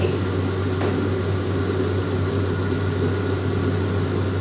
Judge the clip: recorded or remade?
recorded